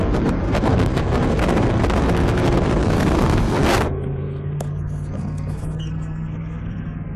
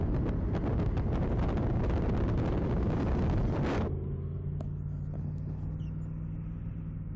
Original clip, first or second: second